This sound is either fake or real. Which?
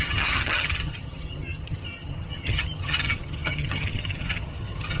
fake